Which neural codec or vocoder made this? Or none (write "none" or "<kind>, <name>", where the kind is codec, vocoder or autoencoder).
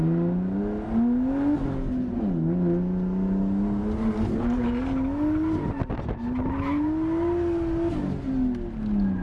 none